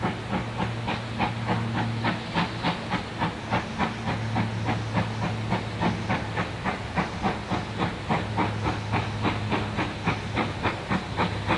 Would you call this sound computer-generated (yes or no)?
no